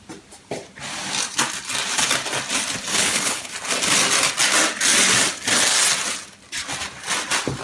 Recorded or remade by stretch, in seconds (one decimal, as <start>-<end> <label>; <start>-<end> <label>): 0.0-2.9 recorded; 2.9-3.5 remade; 3.5-7.6 recorded